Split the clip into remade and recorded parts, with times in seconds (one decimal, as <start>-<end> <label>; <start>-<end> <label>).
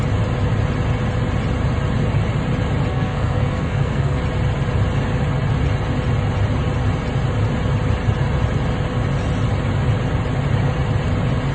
0.0-2.9 recorded; 2.9-4.2 remade; 4.2-11.5 recorded